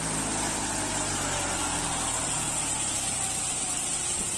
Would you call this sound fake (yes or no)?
no